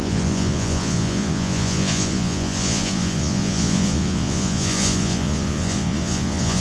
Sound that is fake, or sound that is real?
fake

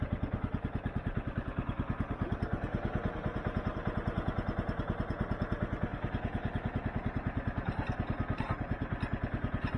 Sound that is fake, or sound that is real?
real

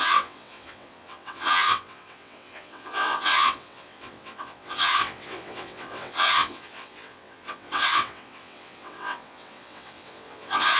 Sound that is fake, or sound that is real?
fake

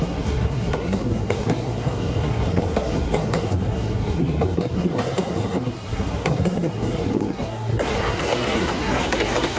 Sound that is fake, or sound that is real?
fake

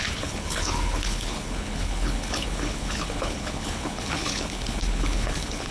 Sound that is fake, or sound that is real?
fake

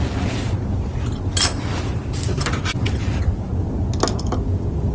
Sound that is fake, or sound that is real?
real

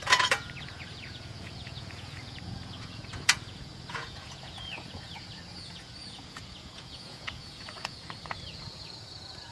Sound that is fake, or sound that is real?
fake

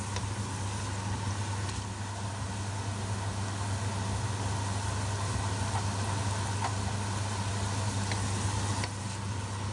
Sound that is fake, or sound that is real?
real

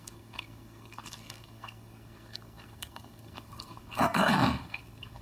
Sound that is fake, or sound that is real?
fake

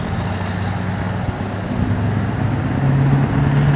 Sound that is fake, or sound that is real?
real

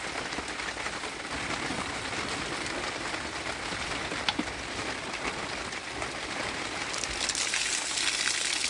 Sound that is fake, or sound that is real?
real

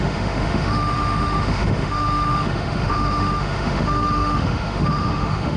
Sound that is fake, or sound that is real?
fake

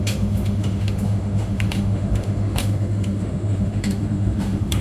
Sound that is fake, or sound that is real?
fake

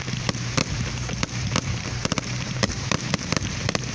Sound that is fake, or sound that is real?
fake